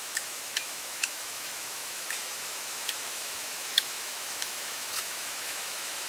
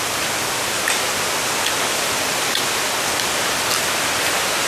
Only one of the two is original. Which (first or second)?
second